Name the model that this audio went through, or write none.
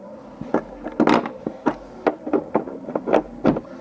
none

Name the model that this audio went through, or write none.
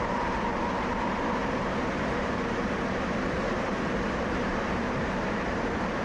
vocoder, BigVGAN v2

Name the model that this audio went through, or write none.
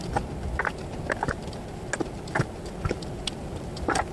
none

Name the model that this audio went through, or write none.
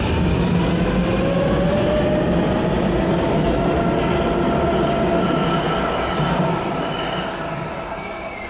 none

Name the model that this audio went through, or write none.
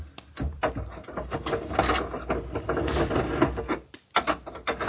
none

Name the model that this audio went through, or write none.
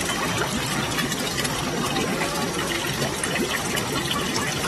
none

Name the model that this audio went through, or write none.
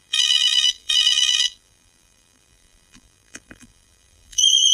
vocoder, BigVGAN v2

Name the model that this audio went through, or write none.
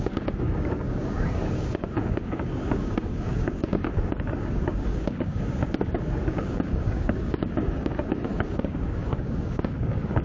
codec, DAC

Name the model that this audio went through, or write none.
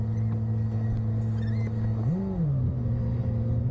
none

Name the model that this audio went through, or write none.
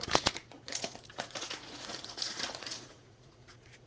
vocoder, Vocos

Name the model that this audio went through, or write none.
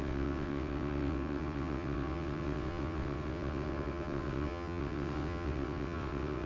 vocoder, WaveNeXt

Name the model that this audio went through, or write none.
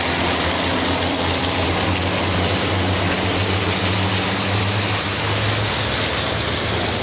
none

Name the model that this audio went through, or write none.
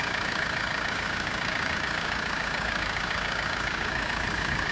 codec, DAC